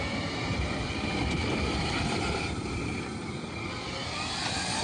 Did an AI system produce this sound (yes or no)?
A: yes